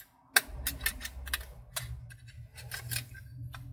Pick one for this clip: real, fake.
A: real